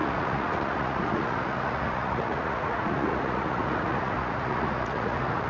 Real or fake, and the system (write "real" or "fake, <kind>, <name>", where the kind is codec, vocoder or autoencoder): fake, vocoder, Vocos